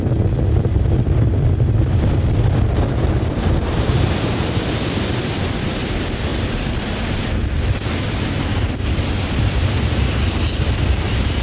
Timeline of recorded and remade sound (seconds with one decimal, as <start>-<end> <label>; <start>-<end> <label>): 0.0-11.4 recorded